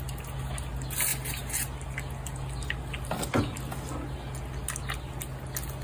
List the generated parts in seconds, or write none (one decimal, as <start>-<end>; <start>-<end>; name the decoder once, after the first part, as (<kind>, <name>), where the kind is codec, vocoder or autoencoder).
none